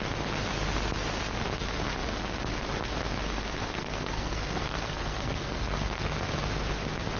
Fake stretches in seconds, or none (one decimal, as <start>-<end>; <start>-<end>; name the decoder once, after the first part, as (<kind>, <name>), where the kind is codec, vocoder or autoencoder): 3.7-6.1 (codec, SNAC)